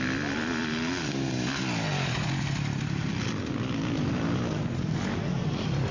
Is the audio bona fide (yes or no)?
yes